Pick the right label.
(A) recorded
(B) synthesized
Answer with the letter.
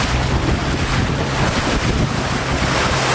A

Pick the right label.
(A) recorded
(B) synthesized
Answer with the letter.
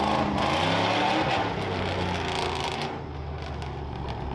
A